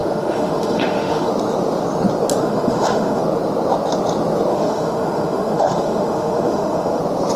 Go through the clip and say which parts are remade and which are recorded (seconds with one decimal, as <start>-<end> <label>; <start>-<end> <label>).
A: 0.0-1.3 remade; 1.3-2.4 recorded; 2.4-3.2 remade; 3.2-4.5 recorded; 4.5-7.0 remade; 7.0-7.4 recorded